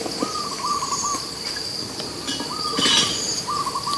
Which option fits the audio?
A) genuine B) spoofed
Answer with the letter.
A